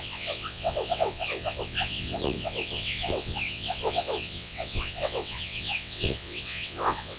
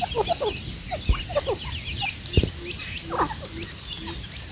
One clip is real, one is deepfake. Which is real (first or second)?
second